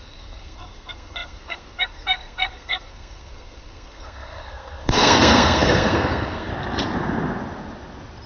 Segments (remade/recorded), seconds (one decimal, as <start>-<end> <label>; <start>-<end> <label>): 0.0-6.5 remade; 6.5-8.3 recorded